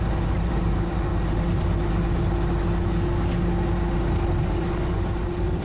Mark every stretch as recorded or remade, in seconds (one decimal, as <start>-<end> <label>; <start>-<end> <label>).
0.0-1.1 remade; 1.1-4.2 recorded; 4.2-5.6 remade